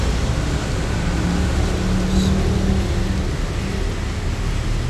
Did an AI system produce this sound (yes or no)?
no